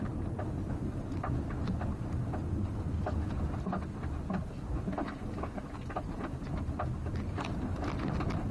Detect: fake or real real